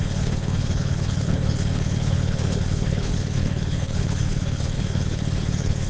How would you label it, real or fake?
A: fake